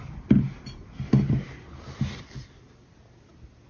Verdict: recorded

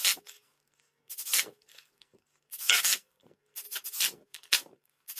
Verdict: remade